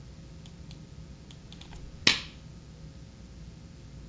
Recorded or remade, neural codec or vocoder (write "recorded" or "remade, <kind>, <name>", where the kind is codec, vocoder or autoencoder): recorded